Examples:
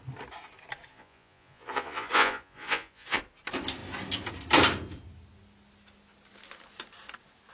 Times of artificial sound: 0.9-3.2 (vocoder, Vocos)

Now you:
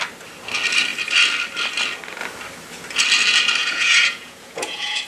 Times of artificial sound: 3.6-5.1 (vocoder, Vocos)

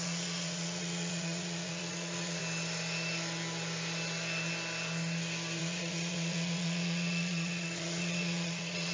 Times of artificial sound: 0.0-2.4 (vocoder, Vocos); 5.6-8.9

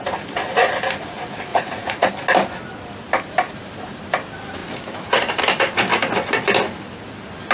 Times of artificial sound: 1.5-2.1 (vocoder, Vocos)